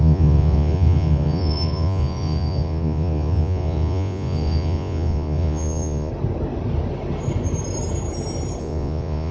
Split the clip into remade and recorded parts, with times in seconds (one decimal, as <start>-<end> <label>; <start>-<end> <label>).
0.0-6.1 remade; 6.1-8.6 recorded; 8.6-9.3 remade